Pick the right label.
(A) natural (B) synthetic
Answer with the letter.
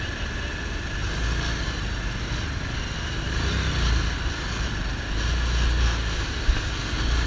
A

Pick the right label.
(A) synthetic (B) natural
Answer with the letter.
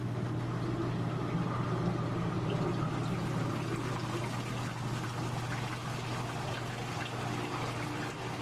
B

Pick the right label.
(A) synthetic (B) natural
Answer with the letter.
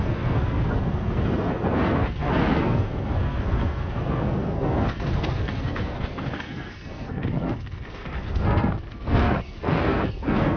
A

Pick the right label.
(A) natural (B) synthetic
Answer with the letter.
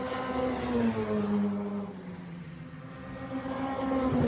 A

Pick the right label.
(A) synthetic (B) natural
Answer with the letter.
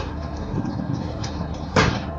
A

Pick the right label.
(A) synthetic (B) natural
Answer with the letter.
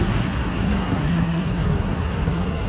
A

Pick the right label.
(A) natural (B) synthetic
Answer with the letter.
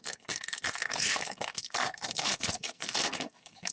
B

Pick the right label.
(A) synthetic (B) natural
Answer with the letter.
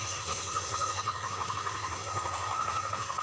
A